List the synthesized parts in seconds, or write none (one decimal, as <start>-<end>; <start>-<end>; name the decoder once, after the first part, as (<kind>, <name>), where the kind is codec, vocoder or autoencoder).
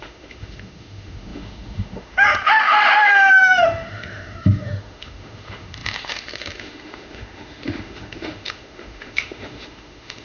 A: 0.0-10.2 (autoencoder, DAC-VAE)